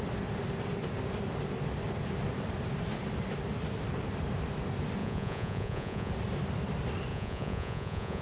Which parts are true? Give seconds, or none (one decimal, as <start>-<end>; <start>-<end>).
0.0-5.0; 6.1-7.1